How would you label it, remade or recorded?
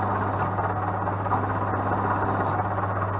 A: recorded